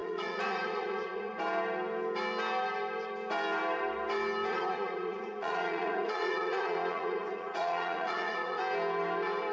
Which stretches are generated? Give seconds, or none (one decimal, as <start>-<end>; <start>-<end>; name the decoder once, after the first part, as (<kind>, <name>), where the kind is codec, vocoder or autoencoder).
0.0-1.4 (vocoder, Vocos); 4.5-8.6